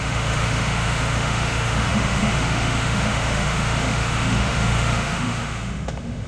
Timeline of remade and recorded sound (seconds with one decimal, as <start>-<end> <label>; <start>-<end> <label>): 0.0-6.3 remade